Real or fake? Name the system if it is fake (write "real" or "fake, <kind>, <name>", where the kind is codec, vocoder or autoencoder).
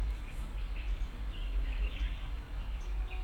fake, codec, DAC